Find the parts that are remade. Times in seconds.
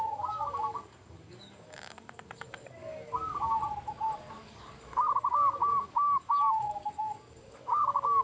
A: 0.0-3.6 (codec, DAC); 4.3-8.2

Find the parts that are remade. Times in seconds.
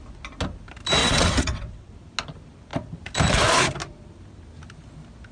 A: 1.0-1.9 (vocoder, WaveNeXt)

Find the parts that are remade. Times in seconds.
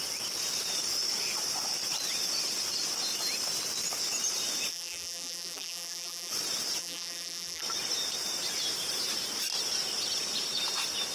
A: 4.7-6.3 (vocoder, BigVGAN v2); 6.8-7.6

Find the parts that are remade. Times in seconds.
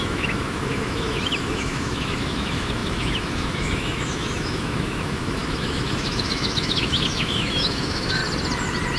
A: 0.0-8.2 (autoencoder, DAC-VAE)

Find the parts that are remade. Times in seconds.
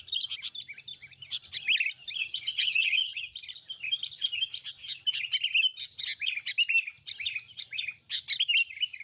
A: 2.2-3.2 (vocoder, HiFi-GAN)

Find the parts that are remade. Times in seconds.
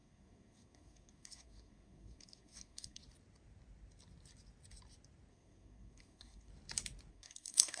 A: 0.0-3.0 (codec, SNAC); 5.3-6.5; 7.1-7.8